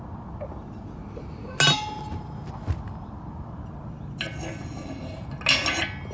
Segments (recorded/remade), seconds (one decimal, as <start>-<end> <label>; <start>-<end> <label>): 0.0-6.1 recorded